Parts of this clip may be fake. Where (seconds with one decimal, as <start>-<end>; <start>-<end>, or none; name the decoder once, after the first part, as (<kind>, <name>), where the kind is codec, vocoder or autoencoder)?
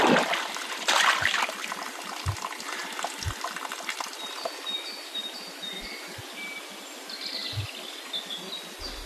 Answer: none